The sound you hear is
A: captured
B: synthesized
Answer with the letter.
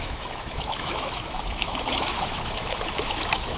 B